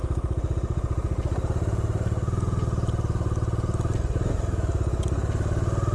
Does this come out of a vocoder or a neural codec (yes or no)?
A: no